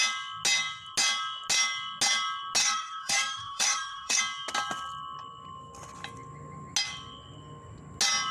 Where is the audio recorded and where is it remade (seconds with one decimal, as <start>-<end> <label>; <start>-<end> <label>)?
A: 0.0-2.6 recorded; 2.6-4.2 remade; 4.2-8.3 recorded